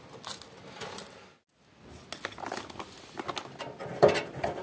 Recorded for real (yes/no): yes